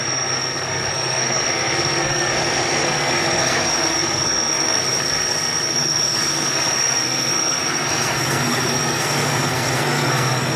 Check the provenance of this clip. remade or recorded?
remade